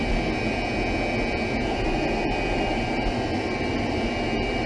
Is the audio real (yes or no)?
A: yes